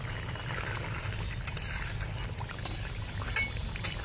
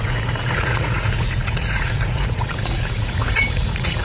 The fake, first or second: second